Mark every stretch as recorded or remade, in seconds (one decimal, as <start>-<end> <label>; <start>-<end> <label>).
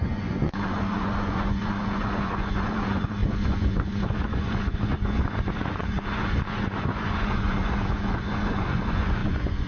0.0-9.7 remade